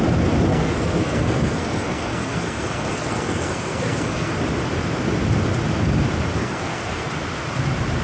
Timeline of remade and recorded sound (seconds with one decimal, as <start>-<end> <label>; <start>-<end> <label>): 0.0-0.5 recorded; 0.5-4.3 remade; 4.3-6.4 recorded; 6.4-7.1 remade; 7.1-8.0 recorded